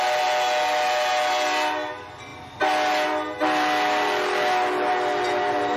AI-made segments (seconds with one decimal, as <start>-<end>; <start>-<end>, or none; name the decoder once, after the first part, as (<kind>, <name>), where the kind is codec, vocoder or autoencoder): none